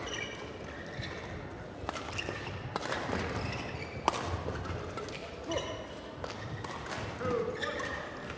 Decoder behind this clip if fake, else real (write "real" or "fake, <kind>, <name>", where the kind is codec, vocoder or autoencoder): real